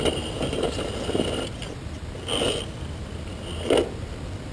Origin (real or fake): real